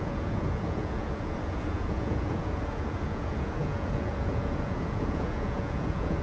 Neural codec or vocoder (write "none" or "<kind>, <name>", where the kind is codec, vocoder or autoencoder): vocoder, Vocos